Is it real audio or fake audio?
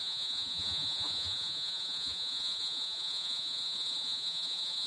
fake